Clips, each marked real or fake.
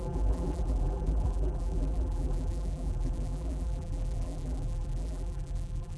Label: fake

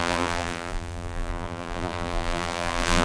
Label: fake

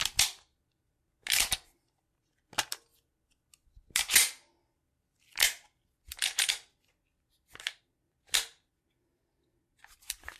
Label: real